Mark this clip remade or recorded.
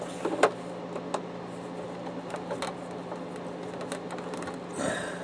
recorded